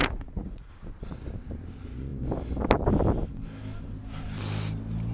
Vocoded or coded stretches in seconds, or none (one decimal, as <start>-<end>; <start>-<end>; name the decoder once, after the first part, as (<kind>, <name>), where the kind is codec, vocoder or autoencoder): 0.0-0.7 (vocoder, Vocos)

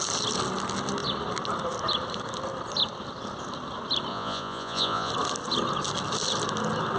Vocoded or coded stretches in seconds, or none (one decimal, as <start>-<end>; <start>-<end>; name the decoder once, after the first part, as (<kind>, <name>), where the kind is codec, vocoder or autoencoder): 4.1-5.1 (vocoder, Vocos)

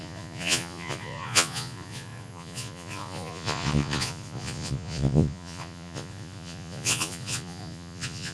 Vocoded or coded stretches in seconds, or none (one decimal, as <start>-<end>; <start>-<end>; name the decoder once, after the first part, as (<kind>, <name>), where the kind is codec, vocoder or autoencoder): 0.0-8.3 (vocoder, Vocos)

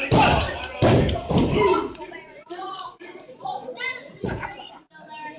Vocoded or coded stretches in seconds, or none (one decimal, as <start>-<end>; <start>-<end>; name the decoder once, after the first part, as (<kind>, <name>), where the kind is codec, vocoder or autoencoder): 1.7-4.9 (vocoder, Vocos)

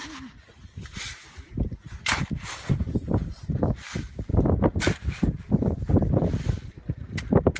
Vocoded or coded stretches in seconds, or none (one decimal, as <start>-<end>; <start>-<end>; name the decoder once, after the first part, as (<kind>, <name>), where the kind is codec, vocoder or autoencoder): none

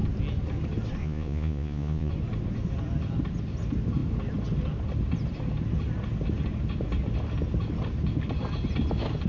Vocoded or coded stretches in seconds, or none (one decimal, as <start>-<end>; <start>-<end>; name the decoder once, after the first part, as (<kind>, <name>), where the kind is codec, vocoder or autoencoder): 1.0-2.1 (vocoder, Vocos)

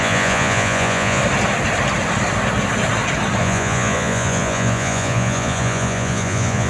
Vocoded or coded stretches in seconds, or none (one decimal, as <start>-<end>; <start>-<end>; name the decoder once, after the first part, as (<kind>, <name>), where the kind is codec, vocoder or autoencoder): 0.0-1.2 (vocoder, Vocos); 3.4-6.7